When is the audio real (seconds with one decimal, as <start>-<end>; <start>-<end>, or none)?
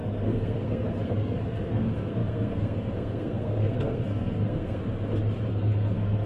4.8-5.5